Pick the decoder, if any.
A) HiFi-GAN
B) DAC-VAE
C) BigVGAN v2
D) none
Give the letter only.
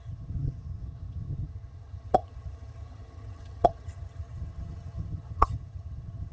A